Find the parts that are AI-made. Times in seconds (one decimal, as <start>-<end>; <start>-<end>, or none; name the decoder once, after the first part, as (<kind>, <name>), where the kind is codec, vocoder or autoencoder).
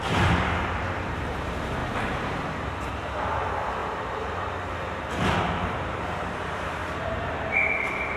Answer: 0.0-8.2 (vocoder, BigVGAN v2)